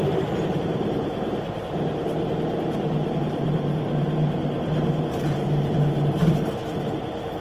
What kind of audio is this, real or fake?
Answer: fake